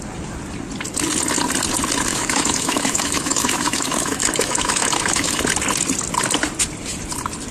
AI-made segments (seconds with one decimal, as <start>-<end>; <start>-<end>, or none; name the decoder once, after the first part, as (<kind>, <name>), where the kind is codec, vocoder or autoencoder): 2.1-5.4 (autoencoder, DAC-VAE)